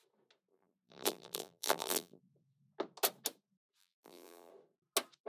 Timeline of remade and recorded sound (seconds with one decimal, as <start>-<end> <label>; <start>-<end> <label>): 0.0-0.5 recorded; 0.5-2.2 remade; 2.2-3.8 recorded; 3.8-4.5 remade; 4.5-5.3 recorded